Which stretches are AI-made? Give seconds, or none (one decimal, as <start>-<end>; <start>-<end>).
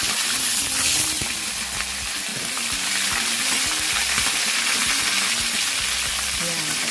none